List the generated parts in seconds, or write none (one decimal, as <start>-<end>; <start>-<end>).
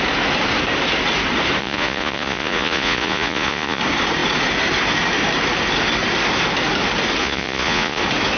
1.6-3.8; 7.2-8.0